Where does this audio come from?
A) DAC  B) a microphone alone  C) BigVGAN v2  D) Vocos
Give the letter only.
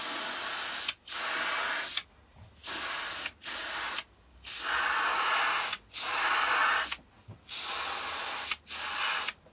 B